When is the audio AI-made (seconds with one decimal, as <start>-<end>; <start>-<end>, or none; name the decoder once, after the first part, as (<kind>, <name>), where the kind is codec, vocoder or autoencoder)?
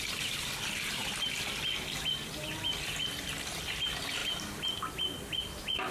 0.0-1.0 (vocoder, BigVGAN v2); 2.8-4.2